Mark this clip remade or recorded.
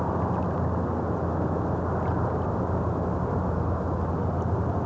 recorded